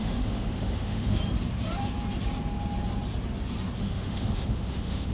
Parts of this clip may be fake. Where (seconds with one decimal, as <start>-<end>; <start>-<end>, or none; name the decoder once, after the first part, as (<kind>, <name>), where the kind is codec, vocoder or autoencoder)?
0.0-1.2 (autoencoder, DAC-VAE); 3.8-5.1